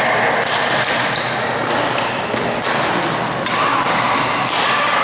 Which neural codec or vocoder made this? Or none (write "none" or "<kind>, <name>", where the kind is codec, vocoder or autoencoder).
none